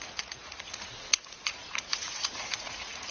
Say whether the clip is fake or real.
fake